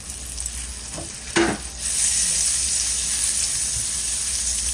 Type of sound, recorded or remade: recorded